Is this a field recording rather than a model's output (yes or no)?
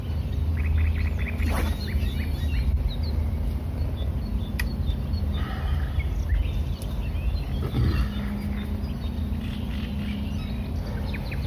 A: yes